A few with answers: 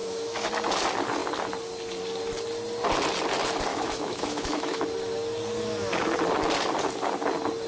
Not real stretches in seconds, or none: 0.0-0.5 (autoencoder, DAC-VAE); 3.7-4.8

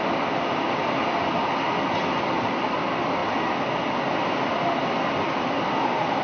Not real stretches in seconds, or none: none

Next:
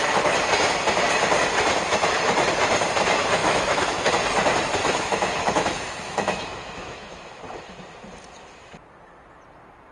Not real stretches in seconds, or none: 3.4-4.1 (autoencoder, DAC-VAE); 4.8-7.4

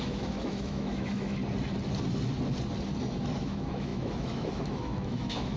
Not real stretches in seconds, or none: 0.0-1.4 (autoencoder, DAC-VAE); 3.4-5.6